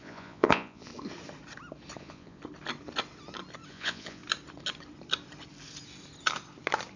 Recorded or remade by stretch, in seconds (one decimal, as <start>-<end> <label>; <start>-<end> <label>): 0.0-0.9 remade; 0.9-2.0 recorded; 2.0-2.4 remade; 2.4-3.7 recorded; 3.7-4.2 remade; 4.2-7.0 recorded